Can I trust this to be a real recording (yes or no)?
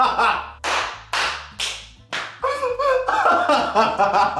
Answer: yes